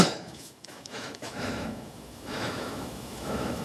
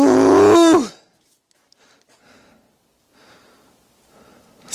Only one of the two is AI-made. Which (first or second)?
first